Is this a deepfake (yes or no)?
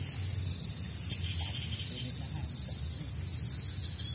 no